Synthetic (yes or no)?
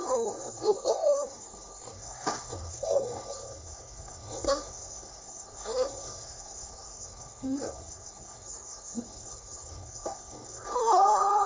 yes